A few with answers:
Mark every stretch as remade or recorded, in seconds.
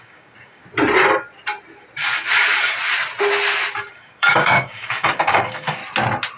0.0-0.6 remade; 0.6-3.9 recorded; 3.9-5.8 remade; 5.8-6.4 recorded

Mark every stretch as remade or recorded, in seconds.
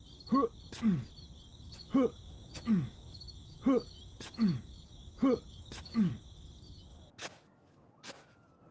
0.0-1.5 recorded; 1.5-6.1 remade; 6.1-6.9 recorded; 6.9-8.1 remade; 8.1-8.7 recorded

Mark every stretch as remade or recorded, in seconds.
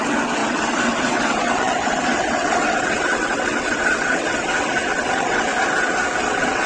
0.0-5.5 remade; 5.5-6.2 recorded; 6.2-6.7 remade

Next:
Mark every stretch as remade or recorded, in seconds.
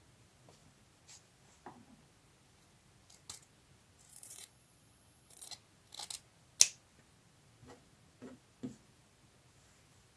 0.0-4.1 recorded; 4.1-5.5 remade; 5.5-10.2 recorded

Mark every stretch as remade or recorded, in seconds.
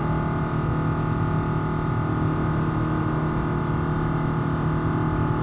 0.0-5.4 recorded